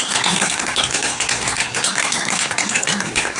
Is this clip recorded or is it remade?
remade